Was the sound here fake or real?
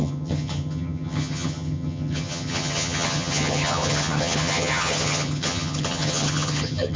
fake